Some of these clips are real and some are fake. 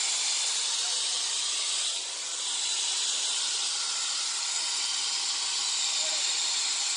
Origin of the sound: real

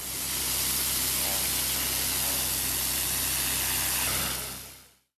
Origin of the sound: real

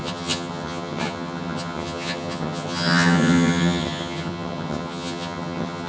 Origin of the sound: fake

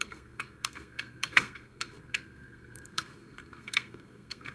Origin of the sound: fake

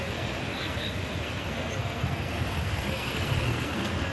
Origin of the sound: fake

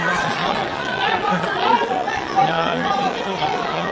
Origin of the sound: fake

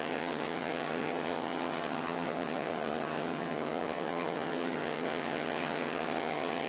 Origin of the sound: fake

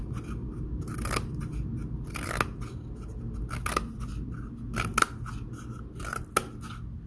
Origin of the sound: real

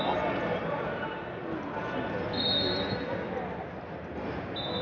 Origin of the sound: real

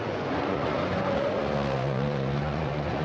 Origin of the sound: fake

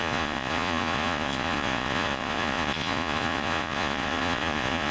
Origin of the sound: fake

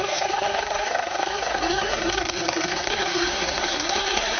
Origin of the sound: fake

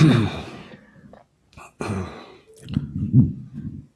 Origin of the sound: real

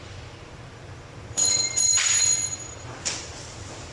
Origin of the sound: fake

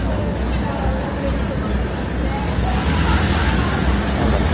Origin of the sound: real